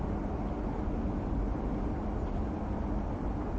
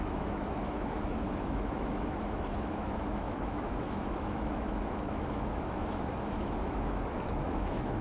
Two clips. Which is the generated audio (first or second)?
second